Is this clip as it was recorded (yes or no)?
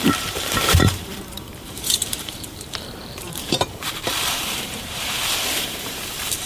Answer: no